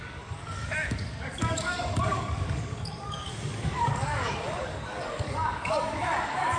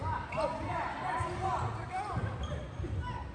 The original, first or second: second